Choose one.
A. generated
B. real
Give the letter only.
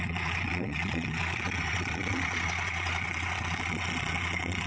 A